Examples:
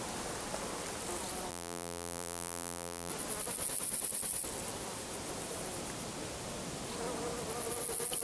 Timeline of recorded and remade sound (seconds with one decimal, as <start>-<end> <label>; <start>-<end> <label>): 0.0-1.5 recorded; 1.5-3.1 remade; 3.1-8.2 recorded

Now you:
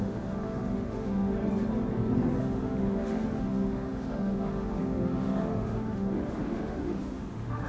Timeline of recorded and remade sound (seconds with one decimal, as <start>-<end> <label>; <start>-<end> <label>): 0.0-1.4 remade; 1.4-2.4 recorded; 2.4-7.7 remade

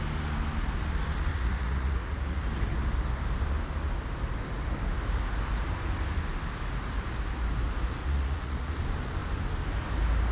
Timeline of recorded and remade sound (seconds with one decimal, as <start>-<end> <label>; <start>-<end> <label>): 0.0-1.3 recorded; 1.3-2.4 remade; 2.4-8.0 recorded; 8.0-8.7 remade; 8.7-10.3 recorded

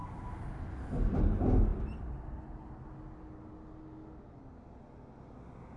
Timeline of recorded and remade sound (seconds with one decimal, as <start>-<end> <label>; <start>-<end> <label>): 0.0-5.8 recorded

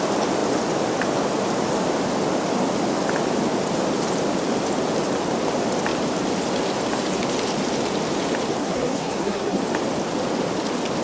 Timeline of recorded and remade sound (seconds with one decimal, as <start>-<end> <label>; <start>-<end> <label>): 0.0-8.6 recorded; 8.6-9.6 remade; 9.6-11.0 recorded